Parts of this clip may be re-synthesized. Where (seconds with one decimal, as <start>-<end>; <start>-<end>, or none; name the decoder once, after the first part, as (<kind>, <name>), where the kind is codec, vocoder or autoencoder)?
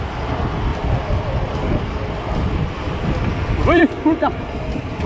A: 0.7-3.8 (vocoder, BigVGAN v2)